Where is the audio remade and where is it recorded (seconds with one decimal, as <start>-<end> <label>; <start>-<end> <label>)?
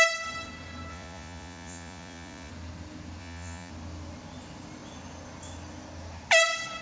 0.0-0.9 recorded; 0.9-2.5 remade; 2.5-3.2 recorded; 3.2-3.7 remade; 3.7-6.8 recorded